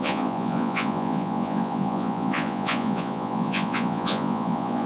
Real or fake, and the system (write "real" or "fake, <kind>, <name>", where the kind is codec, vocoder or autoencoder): fake, vocoder, Vocos